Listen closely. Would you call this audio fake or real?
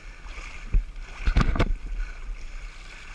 real